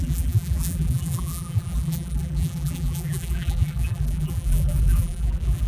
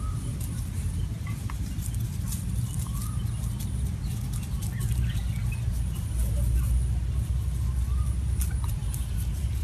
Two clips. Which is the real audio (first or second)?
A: second